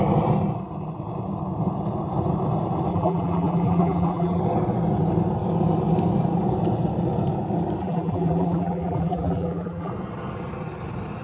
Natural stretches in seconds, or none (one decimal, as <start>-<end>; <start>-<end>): 0.0-2.9; 4.4-7.8; 9.9-11.2